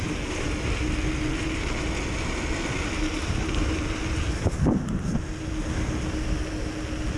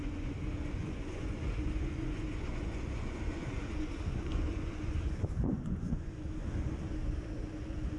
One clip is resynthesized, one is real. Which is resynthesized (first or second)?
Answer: second